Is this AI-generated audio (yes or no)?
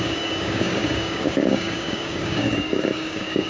yes